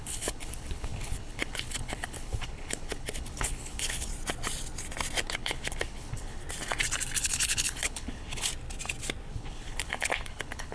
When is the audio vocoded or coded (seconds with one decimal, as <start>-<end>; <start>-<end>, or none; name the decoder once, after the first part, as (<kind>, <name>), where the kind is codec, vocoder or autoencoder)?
0.0-4.1 (codec, HILCodec); 5.3-6.4; 7.2-8.5; 9.3-10.7